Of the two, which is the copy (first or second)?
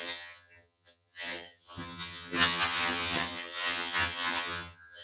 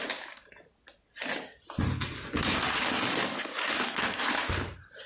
first